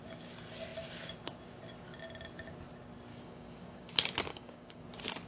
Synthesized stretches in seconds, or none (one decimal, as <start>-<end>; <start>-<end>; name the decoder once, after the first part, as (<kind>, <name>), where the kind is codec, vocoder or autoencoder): 3.1-3.9 (codec, DAC); 4.3-4.8